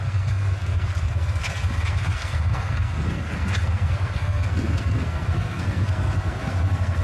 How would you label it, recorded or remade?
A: remade